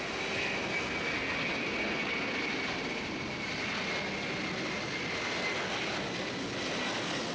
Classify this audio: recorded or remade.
recorded